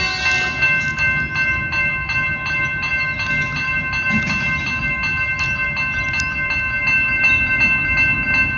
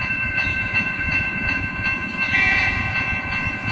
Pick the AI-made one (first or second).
second